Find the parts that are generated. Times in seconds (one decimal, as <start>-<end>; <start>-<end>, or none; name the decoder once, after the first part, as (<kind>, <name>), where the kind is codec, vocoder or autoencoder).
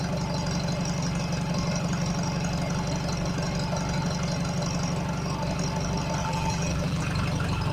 6.2-7.0 (vocoder, BigVGAN v2)